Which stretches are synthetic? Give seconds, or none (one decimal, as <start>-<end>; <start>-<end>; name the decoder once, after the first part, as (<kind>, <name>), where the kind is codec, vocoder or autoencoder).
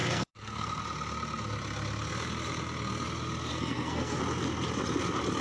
0.0-0.8 (codec, SNAC); 3.5-4.2